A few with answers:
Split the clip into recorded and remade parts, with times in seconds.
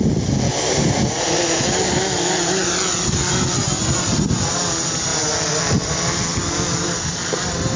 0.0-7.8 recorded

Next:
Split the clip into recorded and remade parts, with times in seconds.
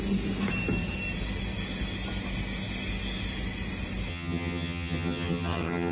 0.0-4.1 recorded; 4.1-5.9 remade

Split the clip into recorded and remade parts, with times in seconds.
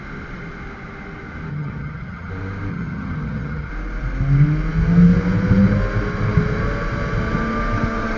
0.0-1.5 recorded; 1.5-2.3 remade; 2.3-2.7 recorded; 2.7-3.7 remade; 3.7-8.2 recorded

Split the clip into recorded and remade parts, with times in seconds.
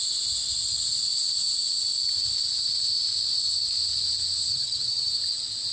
0.0-4.5 recorded; 4.5-5.1 remade; 5.1-5.7 recorded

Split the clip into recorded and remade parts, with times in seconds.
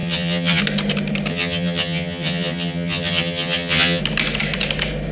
0.0-0.6 remade; 0.6-1.3 recorded; 1.3-4.0 remade; 4.0-5.1 recorded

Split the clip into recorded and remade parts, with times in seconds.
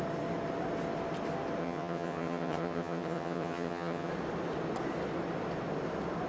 0.0-1.6 recorded; 1.6-4.1 remade; 4.1-6.3 recorded